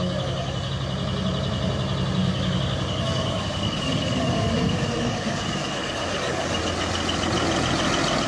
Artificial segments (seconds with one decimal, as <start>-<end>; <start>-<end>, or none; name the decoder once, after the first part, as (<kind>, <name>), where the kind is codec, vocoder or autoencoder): 0.0-0.7 (codec, DAC); 2.2-6.6

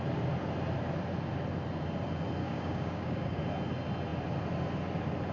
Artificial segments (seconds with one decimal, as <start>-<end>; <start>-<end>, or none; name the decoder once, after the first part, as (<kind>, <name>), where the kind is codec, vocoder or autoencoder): 2.4-3.4 (codec, DAC)

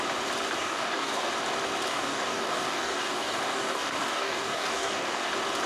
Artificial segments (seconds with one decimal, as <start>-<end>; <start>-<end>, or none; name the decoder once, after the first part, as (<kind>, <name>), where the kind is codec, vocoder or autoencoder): 0.6-1.3 (codec, DAC); 1.9-5.3